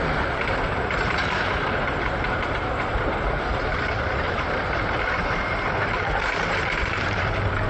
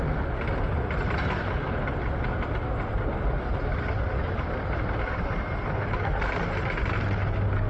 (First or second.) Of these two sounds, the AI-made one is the first